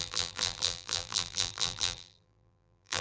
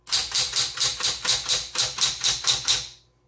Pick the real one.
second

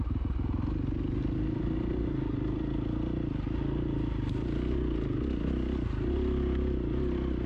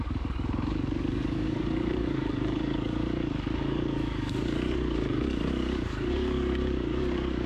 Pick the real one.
first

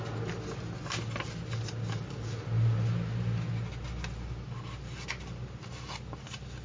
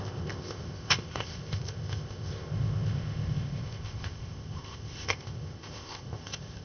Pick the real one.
first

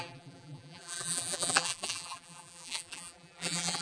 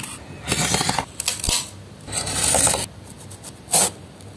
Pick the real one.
second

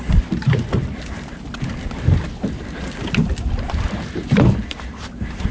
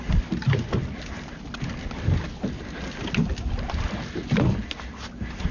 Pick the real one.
second